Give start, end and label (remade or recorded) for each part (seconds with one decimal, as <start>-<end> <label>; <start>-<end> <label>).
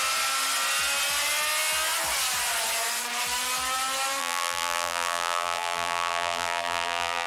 0.0-4.2 recorded; 4.2-7.3 remade